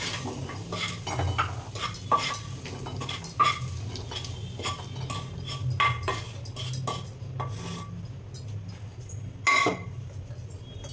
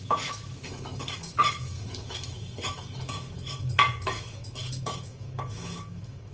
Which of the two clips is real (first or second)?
first